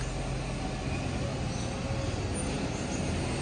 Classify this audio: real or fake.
real